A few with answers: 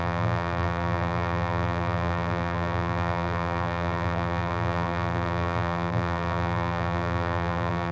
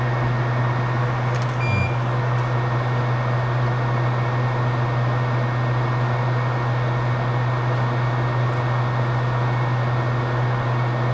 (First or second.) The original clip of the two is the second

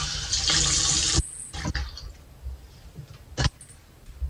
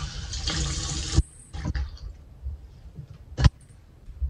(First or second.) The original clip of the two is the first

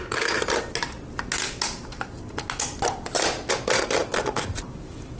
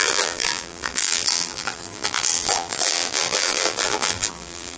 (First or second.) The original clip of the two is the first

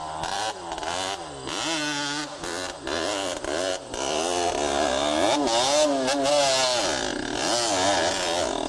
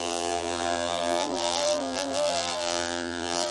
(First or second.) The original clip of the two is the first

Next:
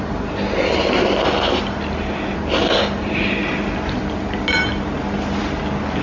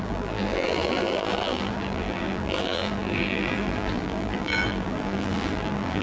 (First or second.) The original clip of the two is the first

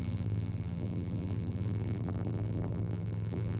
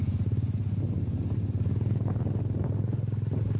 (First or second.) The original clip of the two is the second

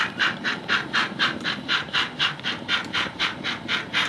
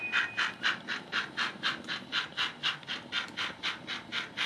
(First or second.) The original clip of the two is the second